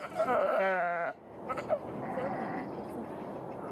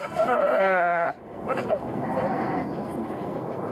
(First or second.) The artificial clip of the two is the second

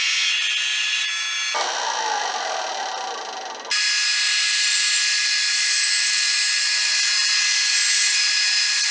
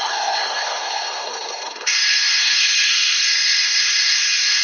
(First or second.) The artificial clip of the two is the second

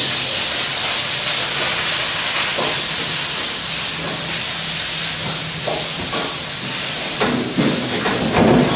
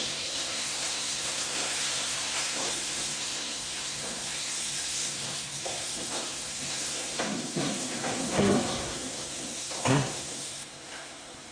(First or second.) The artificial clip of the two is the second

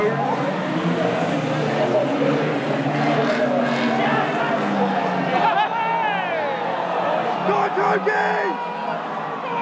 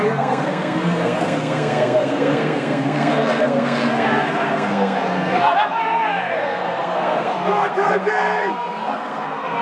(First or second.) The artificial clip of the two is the second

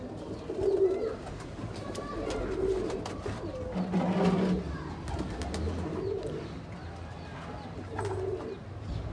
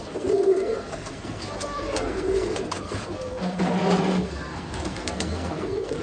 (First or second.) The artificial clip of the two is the second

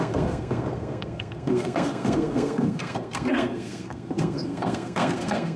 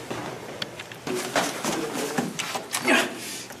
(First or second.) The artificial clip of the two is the first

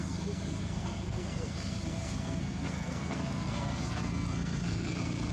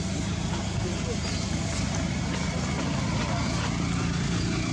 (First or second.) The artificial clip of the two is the first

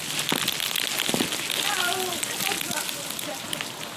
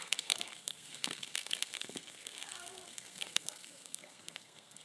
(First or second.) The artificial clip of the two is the second